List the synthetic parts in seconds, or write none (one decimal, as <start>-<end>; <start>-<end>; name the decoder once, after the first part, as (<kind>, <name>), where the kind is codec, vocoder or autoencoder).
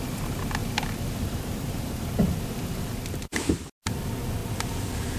0.6-3.7 (vocoder, BigVGAN v2)